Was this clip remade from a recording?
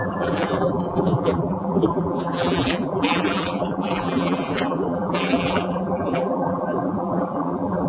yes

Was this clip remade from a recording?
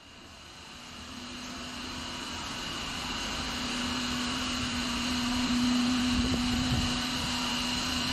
yes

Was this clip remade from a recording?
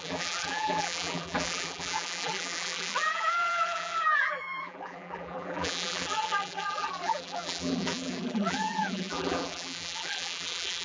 yes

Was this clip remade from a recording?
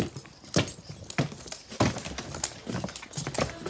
no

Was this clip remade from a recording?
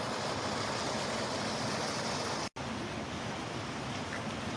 no